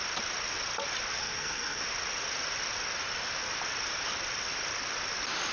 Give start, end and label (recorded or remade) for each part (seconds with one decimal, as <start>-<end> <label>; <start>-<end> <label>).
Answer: 0.0-1.2 recorded; 1.2-1.8 remade; 1.8-5.5 recorded